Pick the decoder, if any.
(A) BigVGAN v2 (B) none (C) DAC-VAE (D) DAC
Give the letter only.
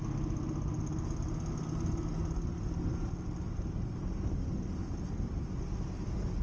B